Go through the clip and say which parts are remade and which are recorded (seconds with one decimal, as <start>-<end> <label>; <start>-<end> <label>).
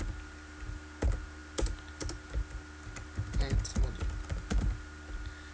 0.0-5.5 recorded